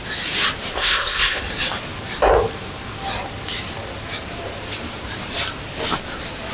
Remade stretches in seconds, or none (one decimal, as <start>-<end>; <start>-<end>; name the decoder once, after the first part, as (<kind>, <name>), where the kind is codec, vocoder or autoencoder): 0.7-1.4 (codec, ZipCodec)